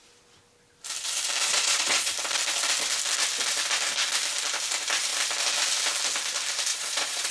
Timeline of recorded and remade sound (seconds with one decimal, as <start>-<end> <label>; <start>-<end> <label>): 0.0-1.5 recorded; 1.5-2.1 remade; 2.1-6.7 recorded; 6.7-7.3 remade